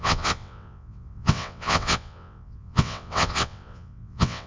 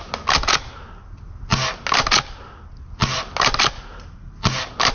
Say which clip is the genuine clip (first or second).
second